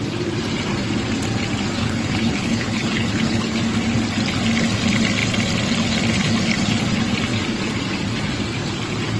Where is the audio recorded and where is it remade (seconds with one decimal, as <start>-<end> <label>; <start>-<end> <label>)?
0.0-1.8 recorded; 1.8-3.6 remade; 3.6-9.2 recorded